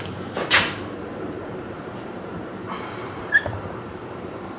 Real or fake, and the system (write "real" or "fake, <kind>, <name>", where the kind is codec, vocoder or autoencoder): fake, vocoder, BigVGAN v2